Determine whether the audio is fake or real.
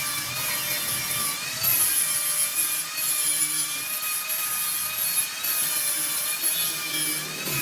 real